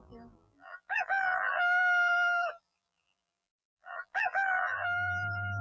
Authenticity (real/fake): fake